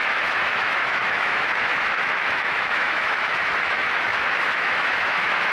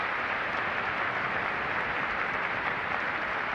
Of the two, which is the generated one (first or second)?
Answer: first